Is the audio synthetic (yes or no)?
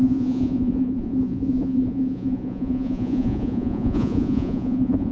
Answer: yes